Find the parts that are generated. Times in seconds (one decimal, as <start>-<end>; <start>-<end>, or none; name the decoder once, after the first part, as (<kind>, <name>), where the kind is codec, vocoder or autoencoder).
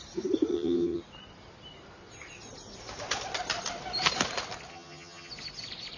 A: 0.5-1.0 (vocoder, HiFi-GAN); 4.7-5.3